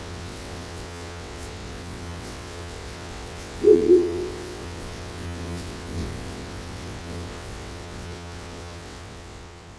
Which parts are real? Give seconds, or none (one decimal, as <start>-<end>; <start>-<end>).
none